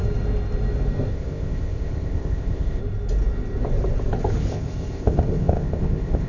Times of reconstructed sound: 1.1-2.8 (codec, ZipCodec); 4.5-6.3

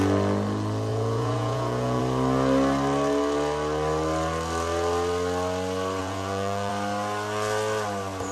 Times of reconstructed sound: 0.9-2.0 (vocoder, Vocos); 6.0-6.7

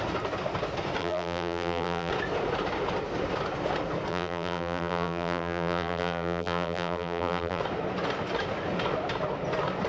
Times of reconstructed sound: 1.0-2.1 (vocoder, BigVGAN v2); 4.1-7.6

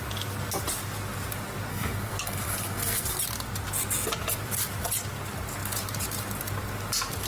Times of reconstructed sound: 1.7-3.2 (codec, SNAC)

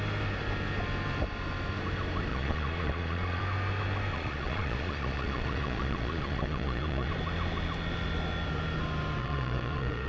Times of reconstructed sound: 2.3-3.4 (vocoder, Vocos); 4.1-7.1; 9.2-10.1

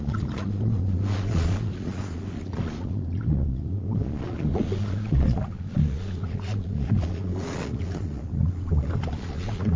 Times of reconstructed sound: 0.0-9.8 (vocoder, Vocos)

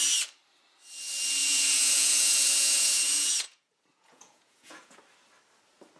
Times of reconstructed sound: 1.4-5.0 (vocoder, Vocos)

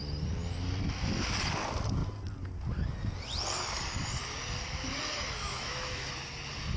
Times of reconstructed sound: 5.4-6.1 (autoencoder, DAC-VAE)